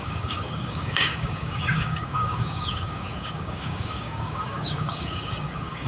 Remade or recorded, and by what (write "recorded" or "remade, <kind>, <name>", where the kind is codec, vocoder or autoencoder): remade, codec, DAC